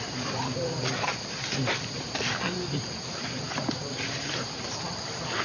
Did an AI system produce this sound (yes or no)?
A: yes